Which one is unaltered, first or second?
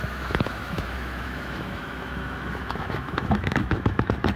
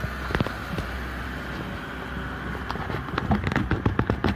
second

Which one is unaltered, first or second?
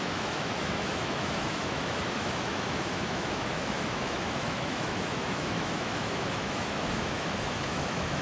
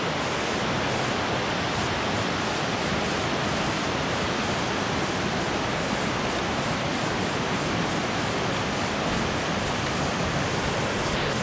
second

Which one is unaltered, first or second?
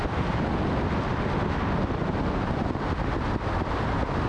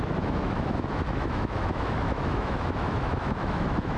first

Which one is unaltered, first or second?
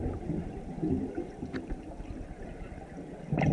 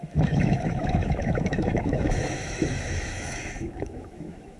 first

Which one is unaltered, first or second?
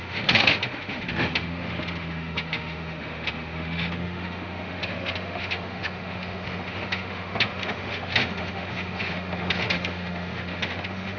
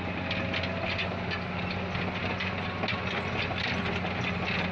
second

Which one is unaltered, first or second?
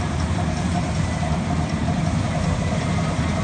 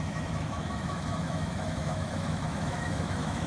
first